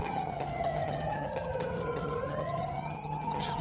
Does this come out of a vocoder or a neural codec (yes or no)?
yes